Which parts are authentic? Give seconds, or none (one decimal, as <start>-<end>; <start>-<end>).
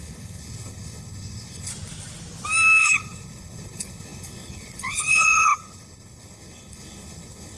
1.7-2.8